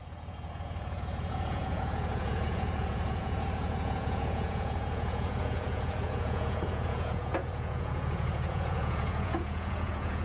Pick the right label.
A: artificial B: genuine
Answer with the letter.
A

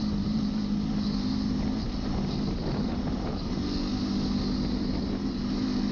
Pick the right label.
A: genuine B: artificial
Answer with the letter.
A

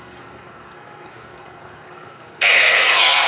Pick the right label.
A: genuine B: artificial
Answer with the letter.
B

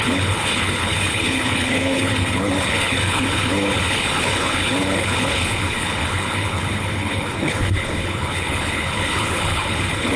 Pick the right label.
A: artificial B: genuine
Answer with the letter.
A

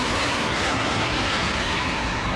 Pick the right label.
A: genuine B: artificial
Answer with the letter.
B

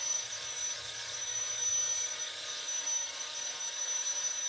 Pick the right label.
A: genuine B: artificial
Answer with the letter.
B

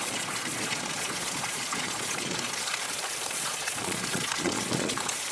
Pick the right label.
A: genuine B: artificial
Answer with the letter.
B